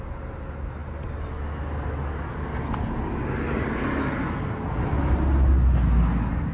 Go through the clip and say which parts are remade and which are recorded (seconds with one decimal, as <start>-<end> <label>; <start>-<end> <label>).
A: 0.0-6.5 recorded